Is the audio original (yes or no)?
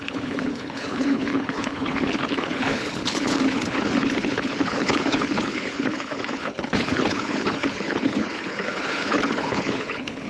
no